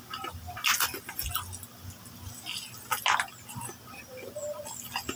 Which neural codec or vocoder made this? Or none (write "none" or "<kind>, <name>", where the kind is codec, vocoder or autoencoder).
none